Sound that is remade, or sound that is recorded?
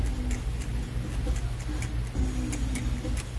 recorded